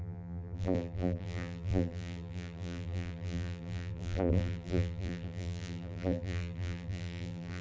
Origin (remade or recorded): remade